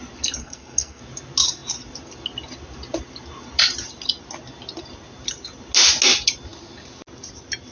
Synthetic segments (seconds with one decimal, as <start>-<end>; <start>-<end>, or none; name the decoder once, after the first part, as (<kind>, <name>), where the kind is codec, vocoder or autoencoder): 0.4-1.0 (codec, SNAC)